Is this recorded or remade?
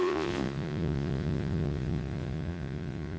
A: remade